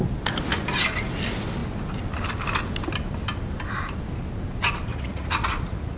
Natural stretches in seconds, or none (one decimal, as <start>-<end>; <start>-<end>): 0.0-4.9